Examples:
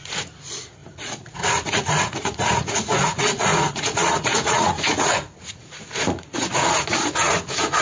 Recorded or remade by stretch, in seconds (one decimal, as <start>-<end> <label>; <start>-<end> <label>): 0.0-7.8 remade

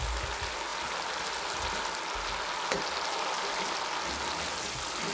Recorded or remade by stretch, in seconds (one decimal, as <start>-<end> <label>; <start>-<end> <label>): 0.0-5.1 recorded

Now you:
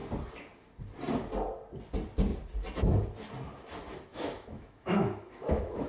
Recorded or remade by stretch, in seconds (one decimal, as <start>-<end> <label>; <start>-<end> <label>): 0.0-4.1 recorded; 4.1-5.9 remade